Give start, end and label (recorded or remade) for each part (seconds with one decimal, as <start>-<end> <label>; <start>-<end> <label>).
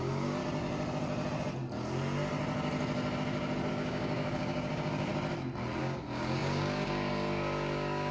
0.0-0.4 remade; 0.4-3.7 recorded; 3.7-5.1 remade; 5.1-5.8 recorded; 5.8-8.1 remade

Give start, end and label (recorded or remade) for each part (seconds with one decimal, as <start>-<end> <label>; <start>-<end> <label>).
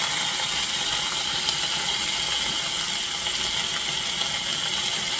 0.0-5.2 recorded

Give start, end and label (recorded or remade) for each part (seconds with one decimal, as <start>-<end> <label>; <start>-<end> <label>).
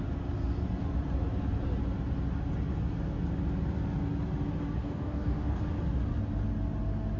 0.0-4.8 recorded; 4.8-5.6 remade; 5.6-7.2 recorded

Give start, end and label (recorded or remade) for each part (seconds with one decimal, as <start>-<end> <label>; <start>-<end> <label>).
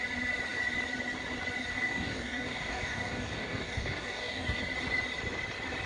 0.0-1.7 recorded; 1.7-4.6 remade; 4.6-5.9 recorded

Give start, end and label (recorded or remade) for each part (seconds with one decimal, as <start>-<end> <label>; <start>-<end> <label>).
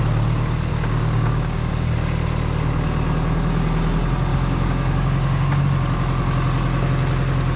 0.0-0.7 recorded; 0.7-1.7 remade; 1.7-4.3 recorded; 4.3-5.6 remade; 5.6-7.6 recorded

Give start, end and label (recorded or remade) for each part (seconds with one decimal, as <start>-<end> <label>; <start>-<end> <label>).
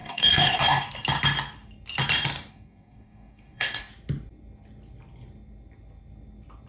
0.0-0.9 remade; 0.9-2.5 recorded; 2.5-3.9 remade; 3.9-6.7 recorded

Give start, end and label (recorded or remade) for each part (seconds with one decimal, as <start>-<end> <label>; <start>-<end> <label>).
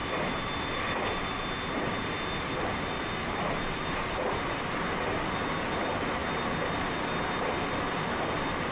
0.0-8.7 recorded